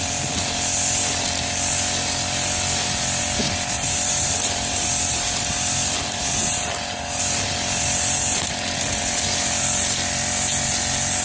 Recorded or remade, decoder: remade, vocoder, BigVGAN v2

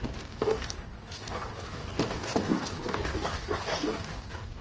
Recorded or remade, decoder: remade, codec, DAC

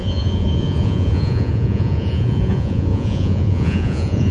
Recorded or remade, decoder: remade, vocoder, Vocos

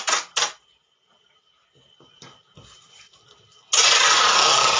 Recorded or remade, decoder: recorded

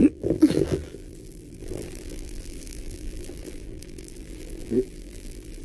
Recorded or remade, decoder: remade, vocoder, BigVGAN v2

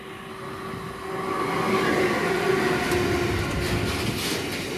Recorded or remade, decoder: recorded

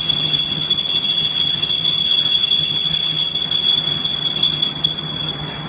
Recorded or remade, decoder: remade, vocoder, HiFi-GAN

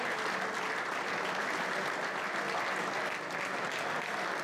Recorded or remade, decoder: recorded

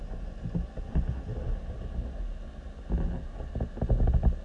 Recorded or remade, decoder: recorded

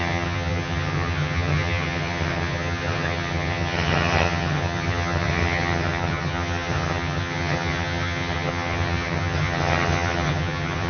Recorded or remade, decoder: remade, vocoder, HiFi-GAN